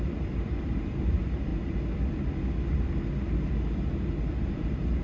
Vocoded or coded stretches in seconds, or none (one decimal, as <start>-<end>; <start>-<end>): 0.0-1.5; 4.5-5.0